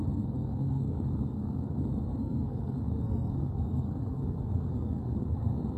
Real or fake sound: fake